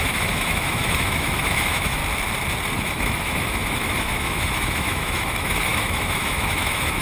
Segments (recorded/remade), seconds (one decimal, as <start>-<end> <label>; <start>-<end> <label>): 0.0-2.0 remade; 2.0-2.7 recorded; 2.7-7.0 remade